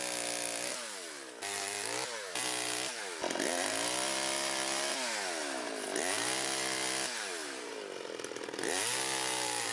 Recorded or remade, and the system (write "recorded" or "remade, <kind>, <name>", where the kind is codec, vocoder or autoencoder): recorded